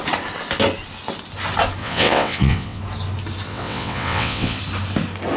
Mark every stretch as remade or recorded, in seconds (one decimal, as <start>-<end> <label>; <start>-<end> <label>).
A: 0.0-1.8 recorded; 1.8-2.8 remade; 2.8-3.5 recorded; 3.5-4.6 remade; 4.6-5.4 recorded